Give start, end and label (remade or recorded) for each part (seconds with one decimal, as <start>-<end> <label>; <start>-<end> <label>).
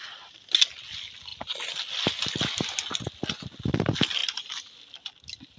0.0-5.6 recorded